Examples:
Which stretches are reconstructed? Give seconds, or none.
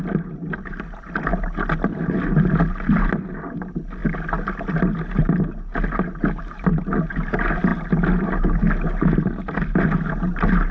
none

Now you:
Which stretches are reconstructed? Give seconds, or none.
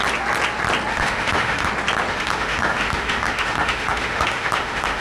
0.9-1.7; 2.1-5.0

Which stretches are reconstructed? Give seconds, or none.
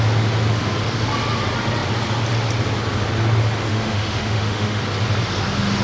3.7-4.8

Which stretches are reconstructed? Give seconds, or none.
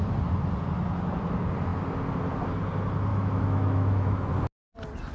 3.1-4.3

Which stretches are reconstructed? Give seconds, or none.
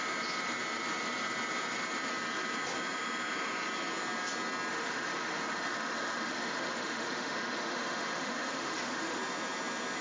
4.7-9.2